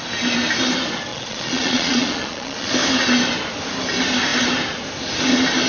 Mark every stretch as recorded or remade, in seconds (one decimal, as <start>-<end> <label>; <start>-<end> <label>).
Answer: 0.0-1.1 recorded; 1.1-2.7 remade; 2.7-5.7 recorded